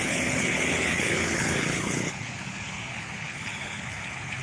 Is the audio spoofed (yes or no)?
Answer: yes